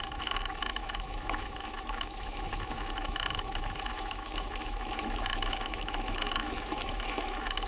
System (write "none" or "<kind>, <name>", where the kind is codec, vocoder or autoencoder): autoencoder, DAC-VAE